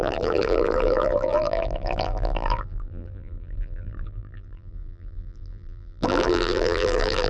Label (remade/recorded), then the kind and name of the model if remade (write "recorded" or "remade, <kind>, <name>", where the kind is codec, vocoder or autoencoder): remade, vocoder, BigVGAN v2